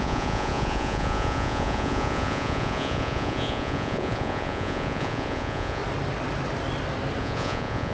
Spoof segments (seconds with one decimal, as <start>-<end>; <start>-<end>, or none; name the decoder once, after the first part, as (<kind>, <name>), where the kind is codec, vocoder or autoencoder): 0.0-5.8 (vocoder, Vocos); 7.2-7.9